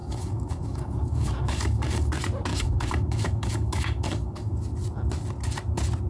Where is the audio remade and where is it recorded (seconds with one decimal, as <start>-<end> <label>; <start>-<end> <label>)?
0.0-2.1 remade; 2.1-2.5 recorded; 2.5-4.6 remade; 4.6-6.1 recorded